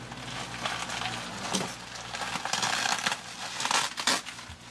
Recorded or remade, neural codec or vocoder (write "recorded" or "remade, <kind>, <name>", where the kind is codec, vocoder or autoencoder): recorded